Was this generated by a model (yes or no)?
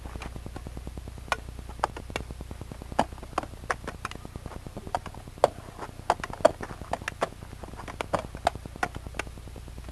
no